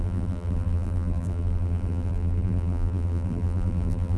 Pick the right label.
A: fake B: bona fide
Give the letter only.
A